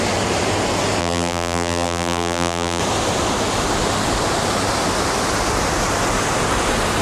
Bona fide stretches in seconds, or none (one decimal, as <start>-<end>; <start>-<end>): 0.0-1.0; 2.8-7.0